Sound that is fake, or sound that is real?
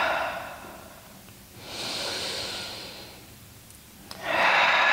fake